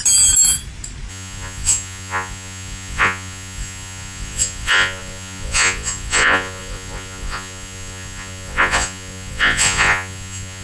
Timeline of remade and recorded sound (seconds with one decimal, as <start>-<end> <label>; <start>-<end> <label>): 0.0-1.1 recorded; 1.1-10.6 remade